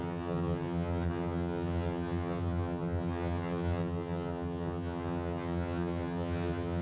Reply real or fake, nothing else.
fake